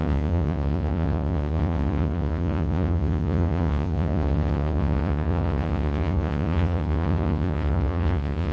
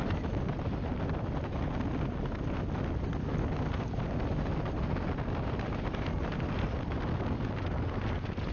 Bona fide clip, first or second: second